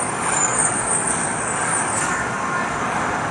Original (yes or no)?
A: no